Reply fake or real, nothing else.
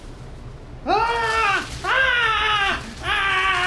real